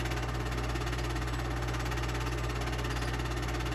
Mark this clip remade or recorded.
recorded